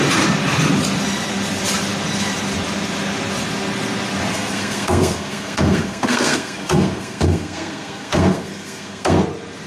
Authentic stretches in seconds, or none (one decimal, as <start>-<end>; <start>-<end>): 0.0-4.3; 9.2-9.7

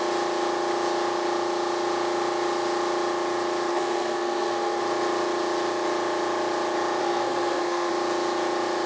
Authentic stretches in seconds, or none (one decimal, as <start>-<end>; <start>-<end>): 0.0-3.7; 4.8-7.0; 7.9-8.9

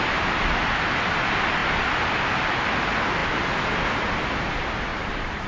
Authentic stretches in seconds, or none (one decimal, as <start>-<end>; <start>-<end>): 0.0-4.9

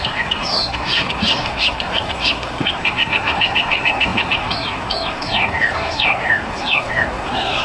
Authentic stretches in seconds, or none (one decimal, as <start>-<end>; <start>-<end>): none

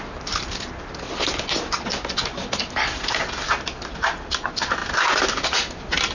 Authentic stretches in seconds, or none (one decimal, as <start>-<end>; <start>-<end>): 0.0-6.1

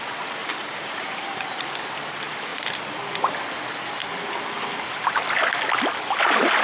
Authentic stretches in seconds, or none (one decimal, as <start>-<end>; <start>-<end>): 0.0-0.4; 1.7-6.6